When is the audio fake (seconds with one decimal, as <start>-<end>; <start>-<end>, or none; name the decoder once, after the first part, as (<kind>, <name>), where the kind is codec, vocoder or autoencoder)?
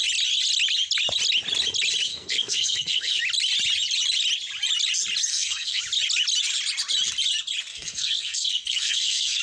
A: 2.1-3.2 (codec, SNAC); 5.3-5.8; 7.7-9.4